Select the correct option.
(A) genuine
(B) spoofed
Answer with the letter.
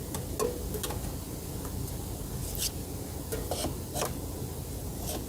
A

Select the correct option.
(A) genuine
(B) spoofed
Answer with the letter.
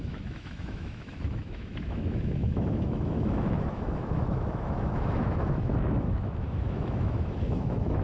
B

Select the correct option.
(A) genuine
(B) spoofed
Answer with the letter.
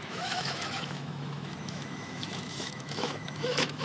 B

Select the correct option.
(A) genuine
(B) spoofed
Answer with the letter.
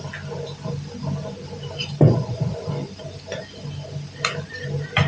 A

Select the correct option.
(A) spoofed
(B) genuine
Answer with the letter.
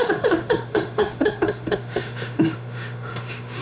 A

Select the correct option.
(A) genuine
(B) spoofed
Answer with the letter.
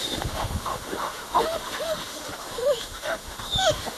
B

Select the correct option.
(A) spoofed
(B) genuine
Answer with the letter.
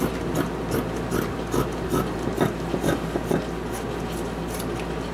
B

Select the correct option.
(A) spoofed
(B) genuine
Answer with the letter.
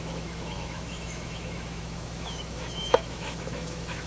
A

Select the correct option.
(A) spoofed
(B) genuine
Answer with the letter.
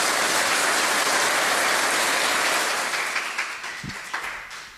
B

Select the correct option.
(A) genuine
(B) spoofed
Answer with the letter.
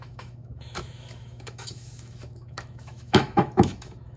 B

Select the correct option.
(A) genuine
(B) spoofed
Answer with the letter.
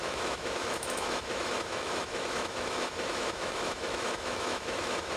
B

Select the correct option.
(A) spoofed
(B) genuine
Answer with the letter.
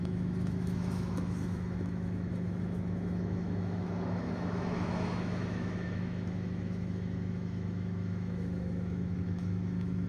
A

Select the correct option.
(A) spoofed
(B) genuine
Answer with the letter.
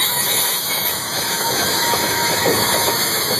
A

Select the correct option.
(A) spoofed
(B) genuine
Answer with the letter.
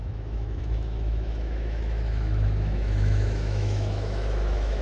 A